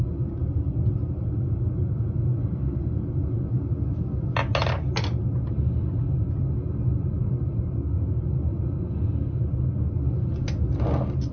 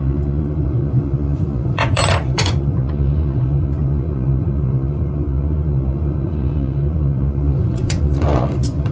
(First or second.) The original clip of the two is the first